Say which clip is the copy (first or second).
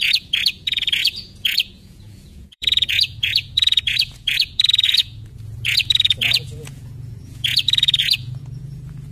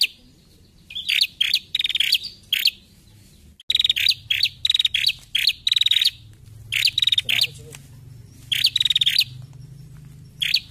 first